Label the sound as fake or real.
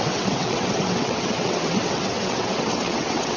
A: fake